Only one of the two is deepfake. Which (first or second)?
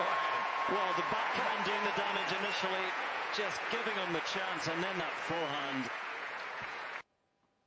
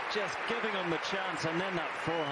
first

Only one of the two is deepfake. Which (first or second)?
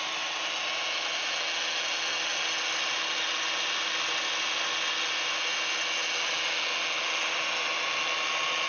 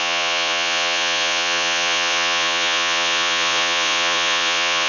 second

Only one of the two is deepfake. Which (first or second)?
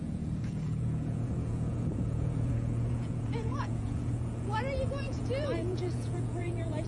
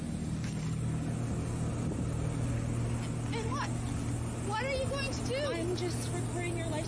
first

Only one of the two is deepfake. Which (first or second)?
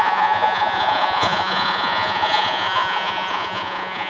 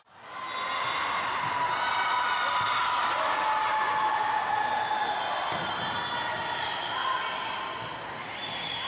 first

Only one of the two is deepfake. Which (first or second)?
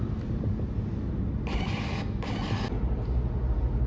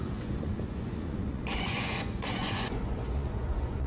second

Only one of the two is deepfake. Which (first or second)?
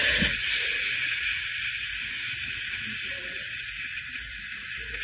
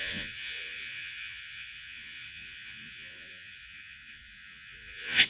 second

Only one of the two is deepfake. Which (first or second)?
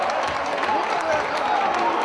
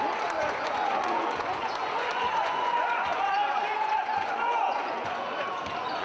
second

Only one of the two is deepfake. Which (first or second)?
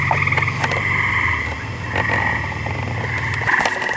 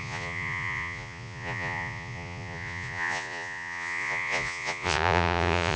second